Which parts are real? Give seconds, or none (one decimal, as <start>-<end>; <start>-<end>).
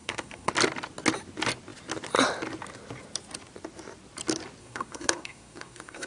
0.5-4.6